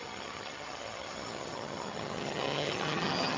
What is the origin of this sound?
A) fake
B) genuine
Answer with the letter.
A